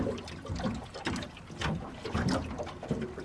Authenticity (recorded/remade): recorded